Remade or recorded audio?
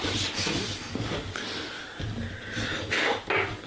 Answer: recorded